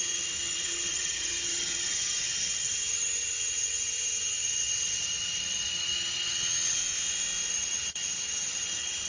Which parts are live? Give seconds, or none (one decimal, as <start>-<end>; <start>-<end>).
6.8-7.5